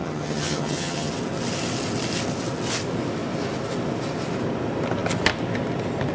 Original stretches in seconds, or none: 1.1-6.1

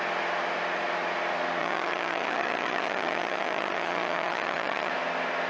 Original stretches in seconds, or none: 0.0-1.6; 4.9-5.5

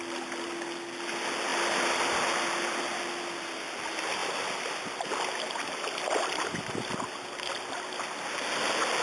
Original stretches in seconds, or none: 0.0-9.0

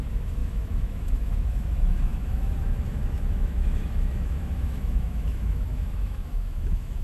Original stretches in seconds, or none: none

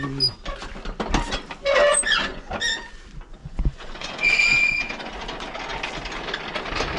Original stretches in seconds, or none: 0.0-1.9; 2.5-3.4; 5.1-7.0